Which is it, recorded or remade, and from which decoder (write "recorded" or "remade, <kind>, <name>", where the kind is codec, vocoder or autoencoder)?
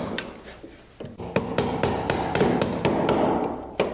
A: recorded